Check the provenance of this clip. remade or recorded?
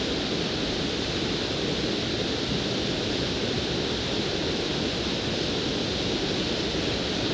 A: recorded